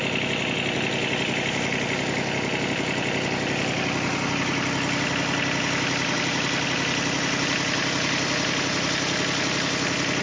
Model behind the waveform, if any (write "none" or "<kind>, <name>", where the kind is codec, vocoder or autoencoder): none